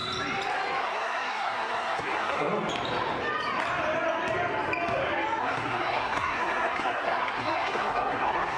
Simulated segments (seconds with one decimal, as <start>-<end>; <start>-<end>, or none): 0.8-2.5; 5.4-8.6